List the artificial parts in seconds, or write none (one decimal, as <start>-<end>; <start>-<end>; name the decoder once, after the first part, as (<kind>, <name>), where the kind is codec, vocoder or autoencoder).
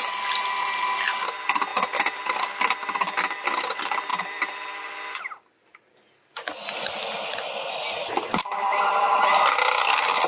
1.7-2.4 (vocoder, BigVGAN v2); 4.1-4.8; 8.0-9.4